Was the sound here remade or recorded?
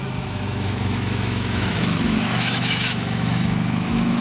remade